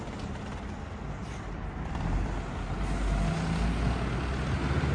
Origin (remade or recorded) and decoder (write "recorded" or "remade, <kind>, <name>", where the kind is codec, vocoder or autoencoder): recorded